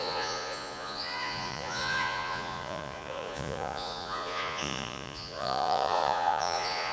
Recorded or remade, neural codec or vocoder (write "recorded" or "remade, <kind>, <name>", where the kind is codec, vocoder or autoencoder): remade, vocoder, Vocos